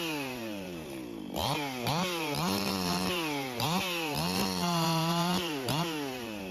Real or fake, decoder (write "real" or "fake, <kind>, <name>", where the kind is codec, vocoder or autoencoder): fake, vocoder, BigVGAN v2